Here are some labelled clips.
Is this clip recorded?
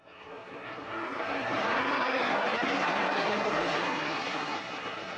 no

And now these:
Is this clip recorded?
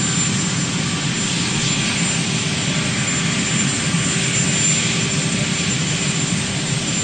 yes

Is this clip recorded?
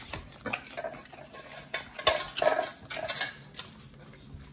yes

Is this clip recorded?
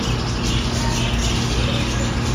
yes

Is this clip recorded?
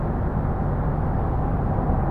yes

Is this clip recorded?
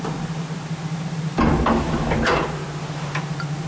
yes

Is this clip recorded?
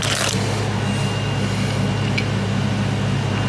yes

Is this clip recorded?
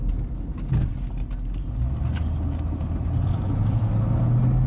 yes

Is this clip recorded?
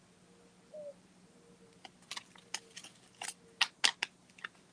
yes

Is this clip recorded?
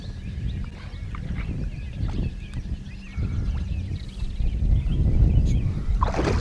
yes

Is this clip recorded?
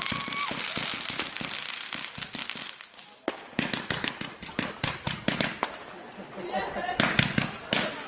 yes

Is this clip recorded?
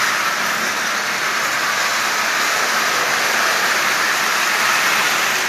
yes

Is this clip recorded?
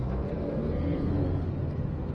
no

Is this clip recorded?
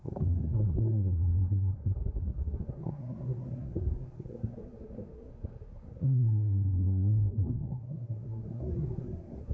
no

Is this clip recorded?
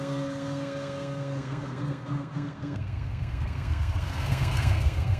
no